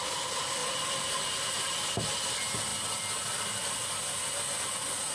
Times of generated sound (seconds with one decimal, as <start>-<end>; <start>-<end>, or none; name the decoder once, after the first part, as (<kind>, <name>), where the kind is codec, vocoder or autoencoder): 0.6-1.9 (vocoder, BigVGAN v2)